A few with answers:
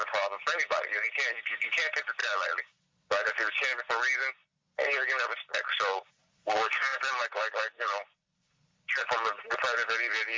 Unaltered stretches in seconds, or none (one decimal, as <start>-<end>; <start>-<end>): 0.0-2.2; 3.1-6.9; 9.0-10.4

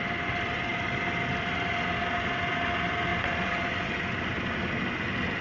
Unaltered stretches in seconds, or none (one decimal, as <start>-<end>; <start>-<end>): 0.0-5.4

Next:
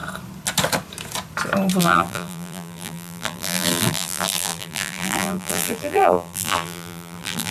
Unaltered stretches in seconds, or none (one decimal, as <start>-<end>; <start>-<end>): 0.0-1.8

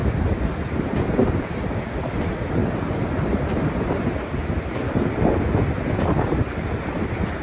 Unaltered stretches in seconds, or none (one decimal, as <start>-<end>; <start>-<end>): 0.0-1.3; 2.6-4.9

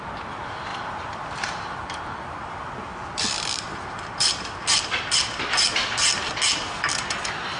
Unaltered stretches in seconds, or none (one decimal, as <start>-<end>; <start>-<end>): 0.0-0.7; 2.0-2.9; 6.4-7.6